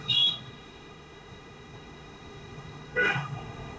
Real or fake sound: fake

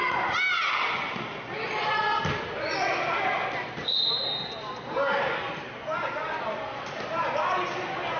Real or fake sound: real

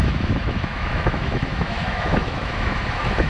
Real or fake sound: fake